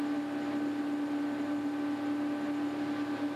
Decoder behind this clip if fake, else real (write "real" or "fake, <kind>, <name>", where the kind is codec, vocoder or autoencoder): real